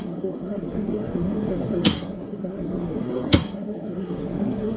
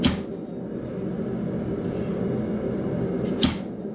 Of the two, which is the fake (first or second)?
first